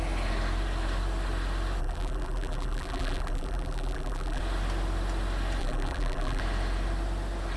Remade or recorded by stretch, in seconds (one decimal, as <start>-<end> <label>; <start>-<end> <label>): 0.0-1.8 recorded; 1.8-4.4 remade; 4.4-5.6 recorded; 5.6-6.4 remade; 6.4-7.6 recorded